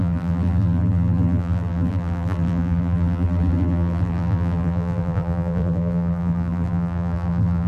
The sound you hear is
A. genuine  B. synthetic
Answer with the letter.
B